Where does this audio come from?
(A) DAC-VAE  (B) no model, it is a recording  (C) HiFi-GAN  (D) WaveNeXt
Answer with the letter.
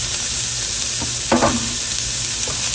B